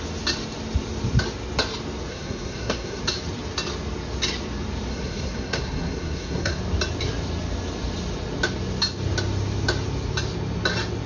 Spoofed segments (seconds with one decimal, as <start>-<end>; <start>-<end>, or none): 2.1-3.0; 4.9-6.6